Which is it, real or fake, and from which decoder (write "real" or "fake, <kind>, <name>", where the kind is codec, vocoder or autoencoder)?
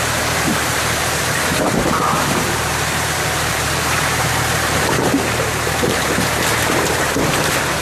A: fake, vocoder, BigVGAN v2